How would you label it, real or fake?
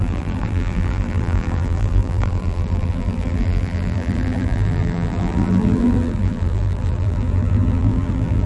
fake